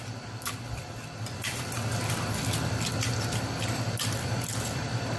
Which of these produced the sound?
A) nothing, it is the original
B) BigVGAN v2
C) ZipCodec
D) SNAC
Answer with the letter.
B